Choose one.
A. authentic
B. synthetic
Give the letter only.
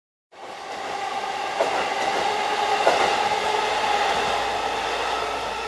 A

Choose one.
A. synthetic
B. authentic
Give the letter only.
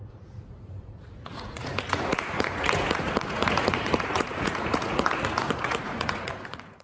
A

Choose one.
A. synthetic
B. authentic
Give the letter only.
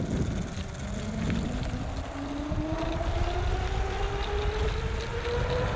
B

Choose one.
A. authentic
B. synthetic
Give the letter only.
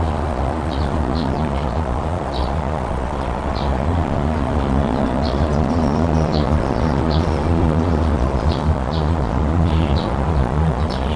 B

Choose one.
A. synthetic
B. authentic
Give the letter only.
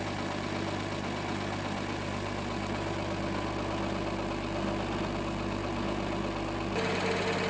B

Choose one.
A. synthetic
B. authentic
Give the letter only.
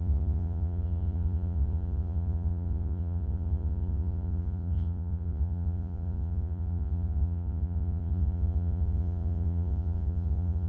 A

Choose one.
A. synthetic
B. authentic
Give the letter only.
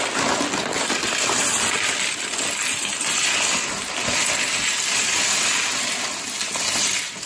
B